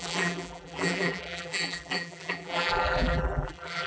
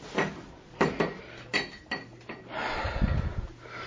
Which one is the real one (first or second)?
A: second